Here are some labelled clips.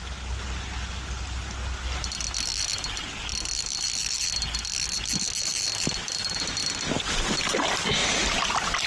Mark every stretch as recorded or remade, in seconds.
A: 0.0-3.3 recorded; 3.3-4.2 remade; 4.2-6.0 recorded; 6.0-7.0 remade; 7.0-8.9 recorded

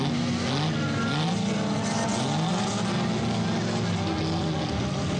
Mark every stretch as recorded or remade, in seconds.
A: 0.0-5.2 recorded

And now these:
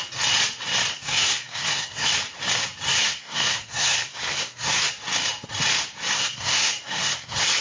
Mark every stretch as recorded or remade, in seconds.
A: 0.0-0.9 recorded; 0.9-2.1 remade; 2.1-3.0 recorded; 3.0-4.9 remade; 4.9-6.1 recorded; 6.1-7.6 remade

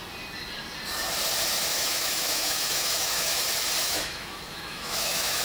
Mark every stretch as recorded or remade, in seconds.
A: 0.0-1.7 recorded; 1.7-3.4 remade; 3.4-3.8 recorded; 3.8-5.4 remade